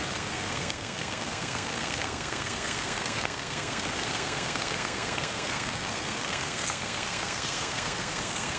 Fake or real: fake